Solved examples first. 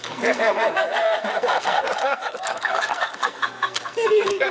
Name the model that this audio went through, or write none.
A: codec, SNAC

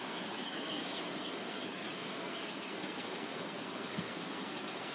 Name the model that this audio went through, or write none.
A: codec, SNAC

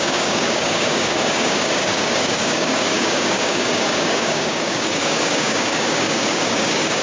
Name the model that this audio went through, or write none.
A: codec, DAC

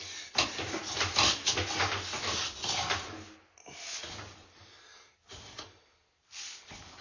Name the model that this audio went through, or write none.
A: none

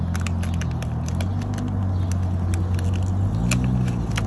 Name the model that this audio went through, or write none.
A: none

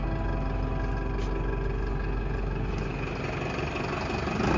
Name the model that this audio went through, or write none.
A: none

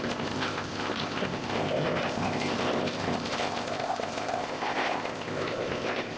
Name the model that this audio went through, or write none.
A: codec, ZipCodec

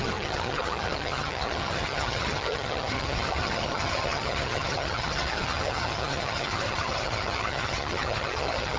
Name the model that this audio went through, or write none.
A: vocoder, HiFi-GAN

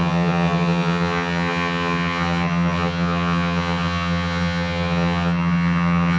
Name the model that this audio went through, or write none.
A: vocoder, HiFi-GAN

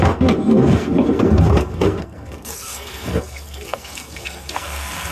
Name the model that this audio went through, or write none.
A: codec, SNAC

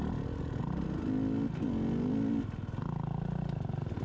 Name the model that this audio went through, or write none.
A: none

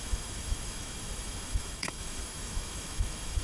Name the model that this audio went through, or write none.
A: autoencoder, DAC-VAE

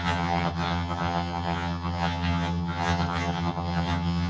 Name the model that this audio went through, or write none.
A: vocoder, HiFi-GAN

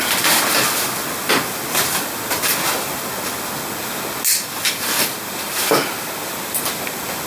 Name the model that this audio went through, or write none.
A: none